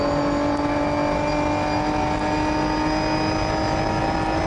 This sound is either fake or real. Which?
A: real